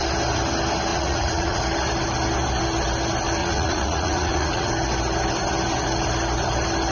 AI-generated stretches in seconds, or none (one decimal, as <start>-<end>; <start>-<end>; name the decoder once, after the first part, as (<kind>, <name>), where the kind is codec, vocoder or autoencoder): 0.9-1.6 (vocoder, Vocos); 3.4-4.7